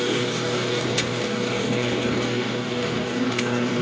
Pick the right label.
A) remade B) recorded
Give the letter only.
A